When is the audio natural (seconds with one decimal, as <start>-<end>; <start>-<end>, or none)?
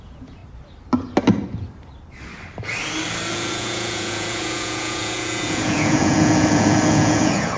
0.4-3.3